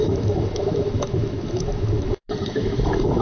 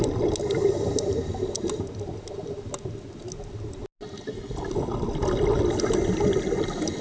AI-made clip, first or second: first